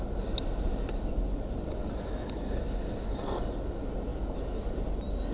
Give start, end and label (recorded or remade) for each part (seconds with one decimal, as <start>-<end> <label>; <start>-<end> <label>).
0.0-5.3 recorded